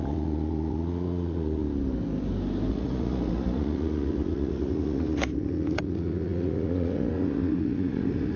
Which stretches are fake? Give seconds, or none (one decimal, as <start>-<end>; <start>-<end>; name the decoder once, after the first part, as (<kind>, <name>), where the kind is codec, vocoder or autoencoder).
0.0-1.6 (vocoder, Vocos); 2.7-8.4